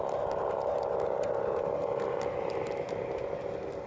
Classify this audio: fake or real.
real